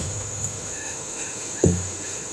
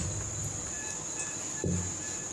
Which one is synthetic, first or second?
first